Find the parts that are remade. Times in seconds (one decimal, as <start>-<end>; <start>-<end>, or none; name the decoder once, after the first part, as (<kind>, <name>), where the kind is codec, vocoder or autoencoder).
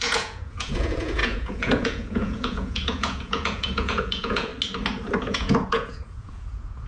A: 0.0-4.5 (vocoder, Vocos); 5.2-6.9